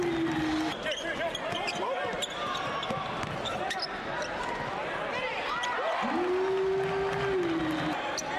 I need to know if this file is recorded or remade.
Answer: recorded